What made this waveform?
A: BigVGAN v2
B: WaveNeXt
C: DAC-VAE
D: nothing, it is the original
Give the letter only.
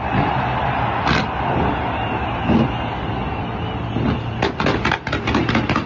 D